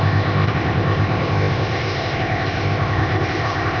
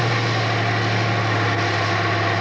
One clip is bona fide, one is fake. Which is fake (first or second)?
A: first